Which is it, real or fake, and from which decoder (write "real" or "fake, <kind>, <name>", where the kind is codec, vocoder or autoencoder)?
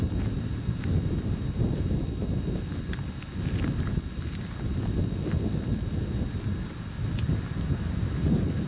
real